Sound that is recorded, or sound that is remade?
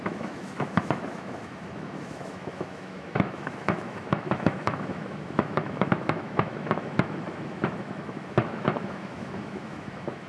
remade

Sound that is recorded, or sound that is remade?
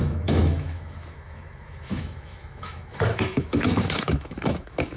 remade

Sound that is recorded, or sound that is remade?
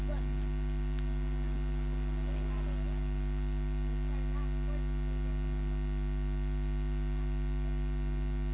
recorded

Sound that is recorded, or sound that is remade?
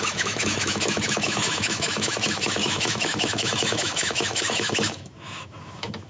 remade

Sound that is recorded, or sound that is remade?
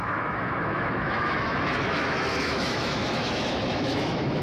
remade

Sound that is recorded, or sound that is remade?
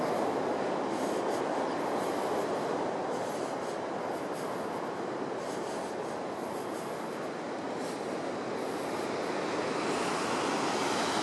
recorded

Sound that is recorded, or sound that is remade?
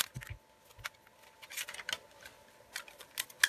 recorded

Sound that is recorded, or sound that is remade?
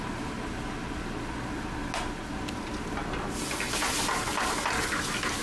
recorded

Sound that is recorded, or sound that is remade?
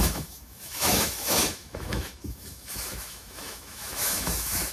remade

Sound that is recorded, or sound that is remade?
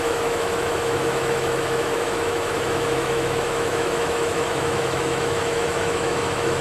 remade